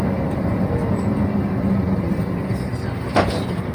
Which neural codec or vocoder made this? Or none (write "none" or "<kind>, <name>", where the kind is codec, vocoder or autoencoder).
none